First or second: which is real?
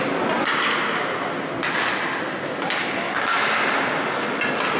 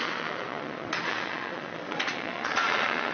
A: first